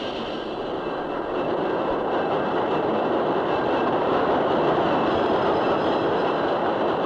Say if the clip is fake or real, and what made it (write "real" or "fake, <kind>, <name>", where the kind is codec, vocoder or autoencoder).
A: fake, vocoder, BigVGAN v2